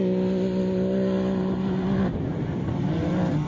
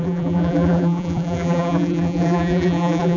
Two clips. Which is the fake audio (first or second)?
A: second